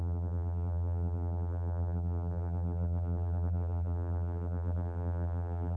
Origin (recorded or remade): remade